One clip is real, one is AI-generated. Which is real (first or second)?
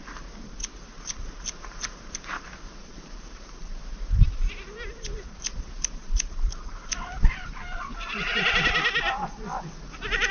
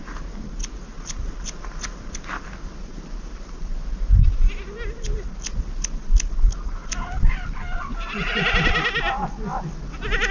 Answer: second